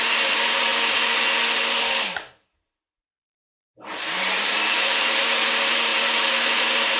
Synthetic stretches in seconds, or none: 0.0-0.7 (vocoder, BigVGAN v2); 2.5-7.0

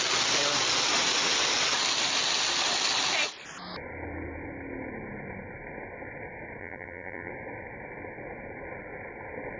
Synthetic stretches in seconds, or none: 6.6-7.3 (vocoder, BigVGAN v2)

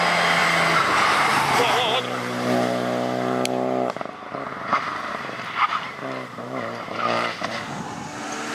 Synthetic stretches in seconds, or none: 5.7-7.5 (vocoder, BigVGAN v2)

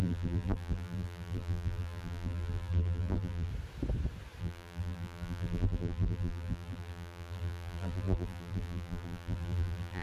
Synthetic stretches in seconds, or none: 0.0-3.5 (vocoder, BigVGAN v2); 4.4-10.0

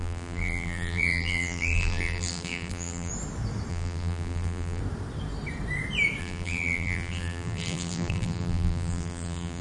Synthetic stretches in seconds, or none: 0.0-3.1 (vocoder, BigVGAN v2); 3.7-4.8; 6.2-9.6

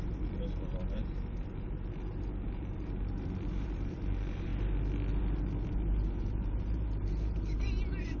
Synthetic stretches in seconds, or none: 0.0-4.5 (vocoder, BigVGAN v2); 5.7-8.2

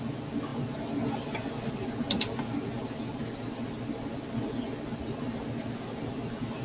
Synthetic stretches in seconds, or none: none

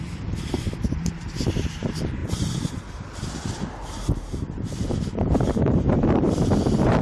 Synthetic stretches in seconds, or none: 0.0-7.0 (vocoder, BigVGAN v2)